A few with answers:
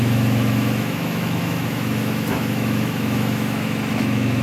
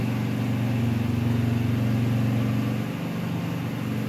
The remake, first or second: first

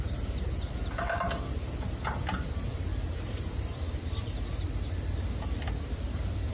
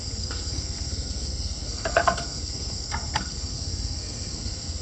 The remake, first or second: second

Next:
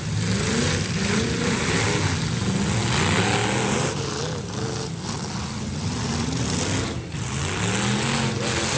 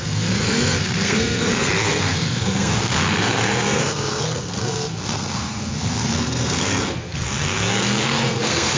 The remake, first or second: second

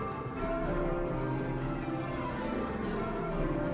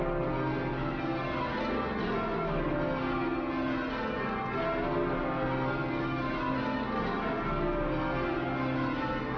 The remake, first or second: first